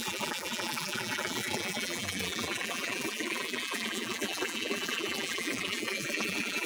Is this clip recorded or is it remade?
remade